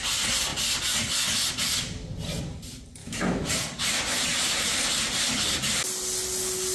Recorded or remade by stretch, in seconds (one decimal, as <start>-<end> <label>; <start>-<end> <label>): 0.0-3.0 recorded; 3.0-3.5 remade; 3.5-6.7 recorded